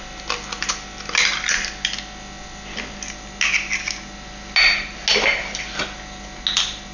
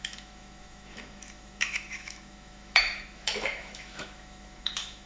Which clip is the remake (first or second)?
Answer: second